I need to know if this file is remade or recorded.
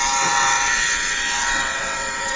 remade